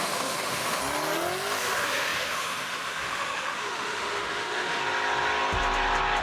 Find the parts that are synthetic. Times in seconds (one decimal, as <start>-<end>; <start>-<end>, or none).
0.0-0.8; 1.6-4.8